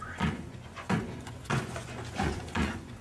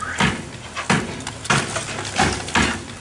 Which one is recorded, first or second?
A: second